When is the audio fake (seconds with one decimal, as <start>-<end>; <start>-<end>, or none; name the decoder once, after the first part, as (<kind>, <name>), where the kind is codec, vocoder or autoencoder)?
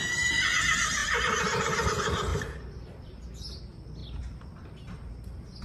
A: 1.0-1.9 (vocoder, BigVGAN v2); 2.3-3.6; 4.0-5.1